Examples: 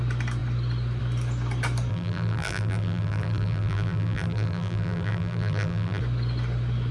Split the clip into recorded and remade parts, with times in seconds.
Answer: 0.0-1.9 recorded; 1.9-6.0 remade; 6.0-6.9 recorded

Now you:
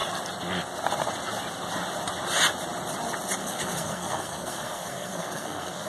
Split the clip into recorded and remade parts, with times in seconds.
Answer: 0.0-3.4 recorded; 3.4-5.9 remade

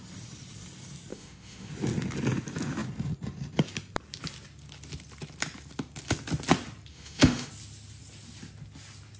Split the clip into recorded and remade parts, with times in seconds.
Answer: 0.0-1.1 recorded; 1.1-1.7 remade; 1.7-6.9 recorded; 6.9-7.5 remade; 7.5-9.2 recorded

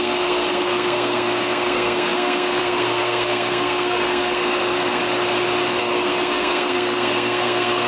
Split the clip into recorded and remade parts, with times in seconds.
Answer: 0.0-5.0 remade; 5.0-5.8 recorded; 5.8-7.9 remade

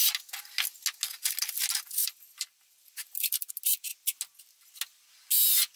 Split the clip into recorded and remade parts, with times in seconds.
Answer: 0.0-2.0 recorded; 2.0-3.5 remade; 3.5-5.8 recorded

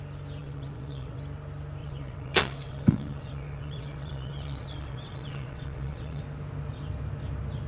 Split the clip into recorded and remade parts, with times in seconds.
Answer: 0.0-0.4 recorded; 0.4-1.2 remade; 1.2-1.8 recorded; 1.8-6.2 remade; 6.2-7.7 recorded